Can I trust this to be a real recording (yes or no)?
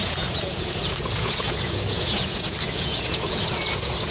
no